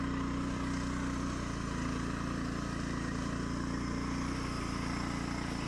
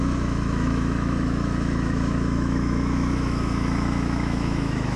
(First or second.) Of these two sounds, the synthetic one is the second